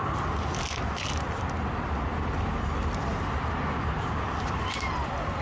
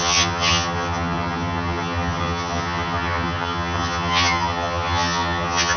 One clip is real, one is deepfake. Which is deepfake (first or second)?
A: second